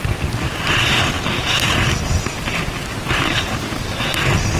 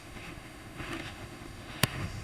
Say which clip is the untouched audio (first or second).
first